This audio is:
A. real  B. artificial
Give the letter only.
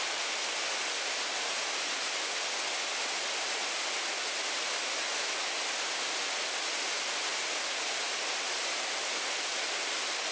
A